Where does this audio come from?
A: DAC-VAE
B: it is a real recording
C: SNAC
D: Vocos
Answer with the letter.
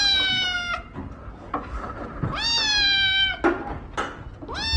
B